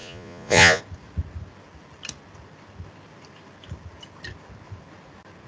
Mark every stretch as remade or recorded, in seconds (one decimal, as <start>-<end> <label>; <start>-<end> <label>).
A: 0.0-0.8 remade; 0.8-5.5 recorded